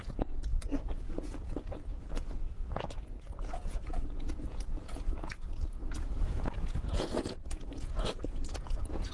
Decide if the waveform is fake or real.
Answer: fake